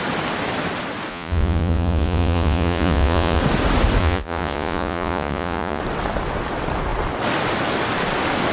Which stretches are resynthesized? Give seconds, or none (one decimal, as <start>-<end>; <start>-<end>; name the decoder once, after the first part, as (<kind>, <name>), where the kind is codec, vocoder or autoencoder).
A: 1.1-3.4 (vocoder, Vocos); 4.0-5.8